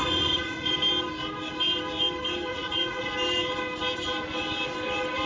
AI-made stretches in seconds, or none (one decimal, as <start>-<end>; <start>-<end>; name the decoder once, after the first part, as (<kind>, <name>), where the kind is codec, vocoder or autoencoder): 0.0-0.7 (vocoder, Vocos); 2.5-3.1

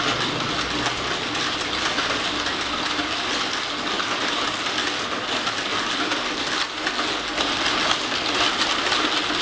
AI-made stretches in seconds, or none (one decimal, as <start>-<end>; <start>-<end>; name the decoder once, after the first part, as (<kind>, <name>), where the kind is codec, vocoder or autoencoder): none

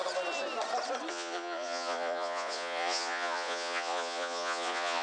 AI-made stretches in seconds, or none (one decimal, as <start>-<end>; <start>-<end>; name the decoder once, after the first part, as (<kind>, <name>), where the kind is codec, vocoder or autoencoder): 1.1-5.0 (vocoder, Vocos)

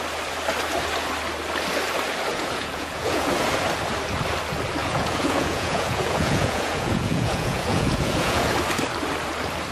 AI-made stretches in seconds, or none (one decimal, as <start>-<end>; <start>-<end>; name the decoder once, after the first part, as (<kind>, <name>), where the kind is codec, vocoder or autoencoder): 2.3-3.3 (vocoder, Vocos); 4.8-8.5

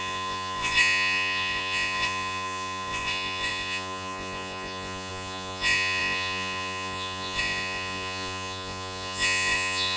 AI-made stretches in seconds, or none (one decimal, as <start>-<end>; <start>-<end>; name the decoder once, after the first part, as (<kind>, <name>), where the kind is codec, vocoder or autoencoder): 0.0-10.0 (vocoder, Vocos)

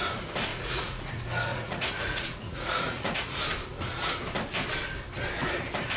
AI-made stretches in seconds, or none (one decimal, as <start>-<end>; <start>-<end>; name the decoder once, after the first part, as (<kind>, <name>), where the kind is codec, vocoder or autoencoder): 0.5-1.1 (vocoder, Vocos); 1.5-3.4

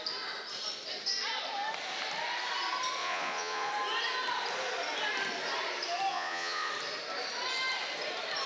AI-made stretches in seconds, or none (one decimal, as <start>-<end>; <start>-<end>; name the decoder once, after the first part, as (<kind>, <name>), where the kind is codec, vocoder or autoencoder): 3.0-3.7 (vocoder, Vocos); 6.1-6.7

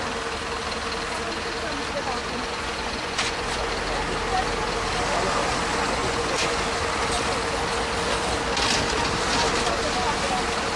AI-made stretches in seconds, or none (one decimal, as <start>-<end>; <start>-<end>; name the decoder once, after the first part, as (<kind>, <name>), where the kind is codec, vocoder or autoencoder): 2.2-3.7 (vocoder, Vocos); 5.7-6.6